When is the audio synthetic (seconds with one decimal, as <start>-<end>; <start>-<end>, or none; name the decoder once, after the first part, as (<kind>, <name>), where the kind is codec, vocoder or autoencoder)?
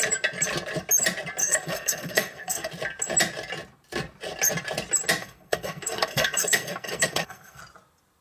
1.4-2.7 (codec, SNAC); 5.2-7.6